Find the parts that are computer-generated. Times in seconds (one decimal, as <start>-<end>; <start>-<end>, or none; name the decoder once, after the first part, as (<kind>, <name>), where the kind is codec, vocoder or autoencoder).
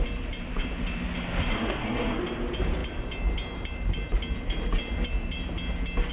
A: 1.5-2.2 (codec, SNAC)